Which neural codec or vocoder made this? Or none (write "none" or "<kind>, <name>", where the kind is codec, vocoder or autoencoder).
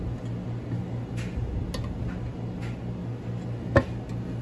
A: none